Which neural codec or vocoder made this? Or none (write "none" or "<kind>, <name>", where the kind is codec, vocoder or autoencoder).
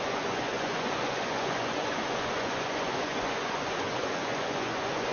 vocoder, Vocos